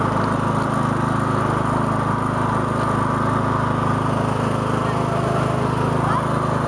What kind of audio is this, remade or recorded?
recorded